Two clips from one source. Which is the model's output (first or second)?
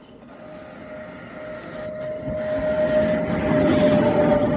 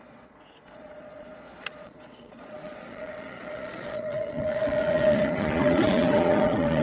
second